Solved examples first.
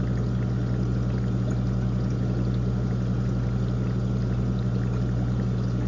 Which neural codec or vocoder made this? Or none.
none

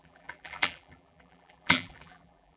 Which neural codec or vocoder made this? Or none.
vocoder, BigVGAN v2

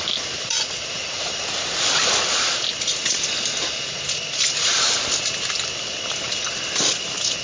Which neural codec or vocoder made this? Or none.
none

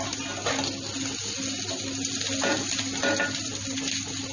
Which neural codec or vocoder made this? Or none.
none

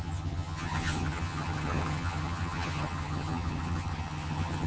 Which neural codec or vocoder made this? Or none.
vocoder, HiFi-GAN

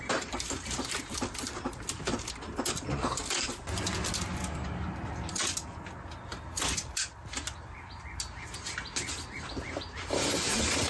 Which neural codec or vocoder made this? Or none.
none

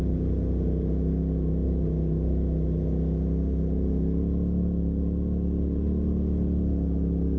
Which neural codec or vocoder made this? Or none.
none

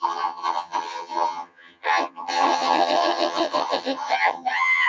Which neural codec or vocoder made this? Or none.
vocoder, HiFi-GAN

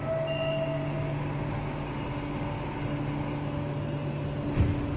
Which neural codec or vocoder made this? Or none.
none